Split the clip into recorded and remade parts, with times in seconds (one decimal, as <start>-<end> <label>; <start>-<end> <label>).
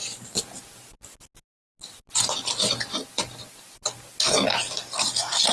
0.0-5.5 recorded